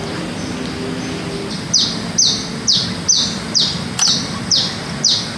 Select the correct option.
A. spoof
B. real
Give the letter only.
B